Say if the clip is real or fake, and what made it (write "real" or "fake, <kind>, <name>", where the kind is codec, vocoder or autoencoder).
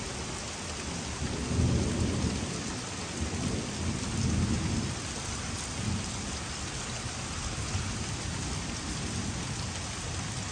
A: real